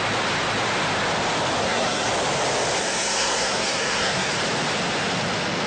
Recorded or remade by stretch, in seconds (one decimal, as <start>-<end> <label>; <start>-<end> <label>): 0.0-1.6 recorded; 1.6-2.1 remade; 2.1-2.8 recorded; 2.8-4.3 remade; 4.3-5.7 recorded